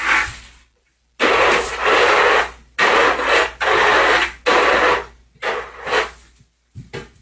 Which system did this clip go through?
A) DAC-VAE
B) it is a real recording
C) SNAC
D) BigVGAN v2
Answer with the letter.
B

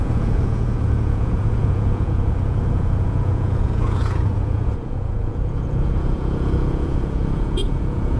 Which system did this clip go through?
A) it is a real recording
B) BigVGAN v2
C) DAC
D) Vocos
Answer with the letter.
D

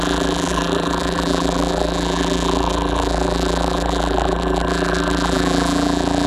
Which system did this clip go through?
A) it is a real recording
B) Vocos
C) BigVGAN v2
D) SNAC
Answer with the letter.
C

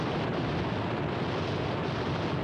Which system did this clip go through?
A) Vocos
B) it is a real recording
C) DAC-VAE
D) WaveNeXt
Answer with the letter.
B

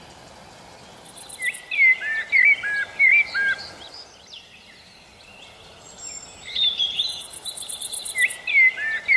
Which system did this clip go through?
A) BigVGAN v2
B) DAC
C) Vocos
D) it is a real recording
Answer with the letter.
D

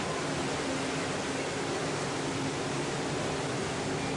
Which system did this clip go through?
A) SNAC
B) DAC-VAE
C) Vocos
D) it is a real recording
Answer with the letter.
D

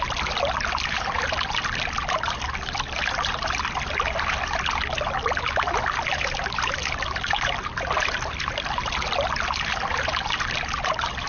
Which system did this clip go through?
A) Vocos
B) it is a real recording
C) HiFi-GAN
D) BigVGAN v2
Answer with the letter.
B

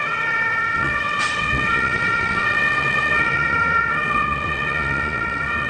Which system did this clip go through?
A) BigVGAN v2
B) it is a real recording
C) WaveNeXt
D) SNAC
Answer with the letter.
C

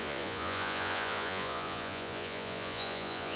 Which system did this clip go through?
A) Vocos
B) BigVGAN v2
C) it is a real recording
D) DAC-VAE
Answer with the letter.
A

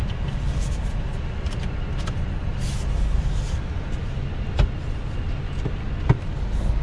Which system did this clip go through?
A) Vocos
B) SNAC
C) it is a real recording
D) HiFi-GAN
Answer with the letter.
C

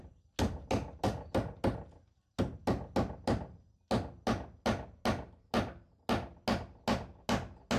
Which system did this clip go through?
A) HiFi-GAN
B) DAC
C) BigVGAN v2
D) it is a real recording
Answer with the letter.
D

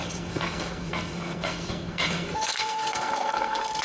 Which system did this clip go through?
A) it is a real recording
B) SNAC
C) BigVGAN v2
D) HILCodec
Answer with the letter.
B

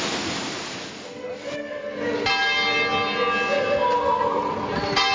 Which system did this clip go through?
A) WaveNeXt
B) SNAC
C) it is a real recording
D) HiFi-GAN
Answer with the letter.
C